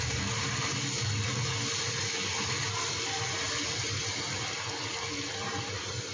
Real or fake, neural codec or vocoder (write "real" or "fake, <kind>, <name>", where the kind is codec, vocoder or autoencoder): real